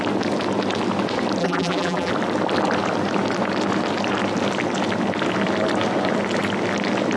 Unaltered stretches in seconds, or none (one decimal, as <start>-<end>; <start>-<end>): 0.0-1.4; 2.1-7.2